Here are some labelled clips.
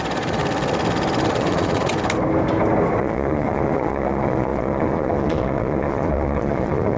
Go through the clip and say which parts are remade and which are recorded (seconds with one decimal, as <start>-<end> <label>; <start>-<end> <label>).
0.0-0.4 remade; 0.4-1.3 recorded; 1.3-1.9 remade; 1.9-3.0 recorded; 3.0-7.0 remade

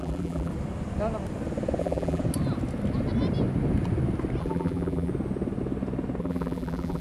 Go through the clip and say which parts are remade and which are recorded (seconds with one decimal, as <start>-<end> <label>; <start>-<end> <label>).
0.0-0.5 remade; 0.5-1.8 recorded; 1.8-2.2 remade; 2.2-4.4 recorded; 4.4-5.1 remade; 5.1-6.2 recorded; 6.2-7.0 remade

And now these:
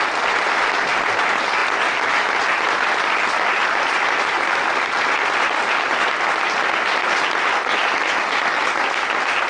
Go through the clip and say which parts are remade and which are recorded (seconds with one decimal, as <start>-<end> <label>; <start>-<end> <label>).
0.0-9.5 recorded

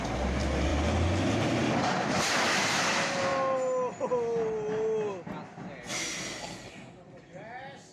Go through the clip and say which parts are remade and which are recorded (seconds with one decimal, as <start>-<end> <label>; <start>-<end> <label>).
0.0-7.9 recorded